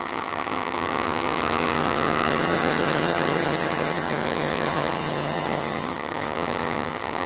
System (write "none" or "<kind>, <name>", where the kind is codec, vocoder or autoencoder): vocoder, HiFi-GAN